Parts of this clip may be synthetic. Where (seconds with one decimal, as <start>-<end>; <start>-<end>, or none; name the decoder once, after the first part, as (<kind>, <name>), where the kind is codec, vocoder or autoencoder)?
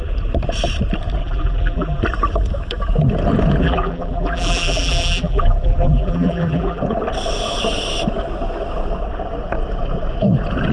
1.2-2.0 (vocoder, BigVGAN v2); 3.6-6.8